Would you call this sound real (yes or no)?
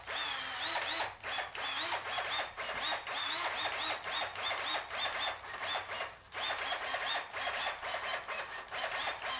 yes